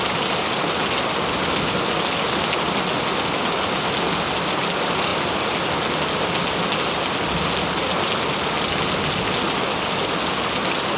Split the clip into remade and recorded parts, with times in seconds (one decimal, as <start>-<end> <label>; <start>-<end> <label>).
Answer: 0.0-11.0 recorded